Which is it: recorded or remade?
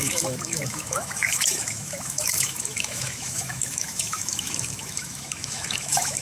remade